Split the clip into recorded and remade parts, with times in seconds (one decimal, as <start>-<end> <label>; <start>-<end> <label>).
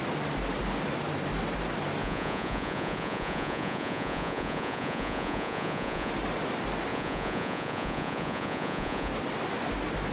0.0-2.0 recorded; 2.0-6.1 remade; 6.1-6.9 recorded; 6.9-9.1 remade; 9.1-10.1 recorded